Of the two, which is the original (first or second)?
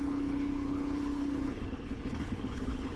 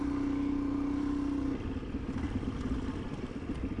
second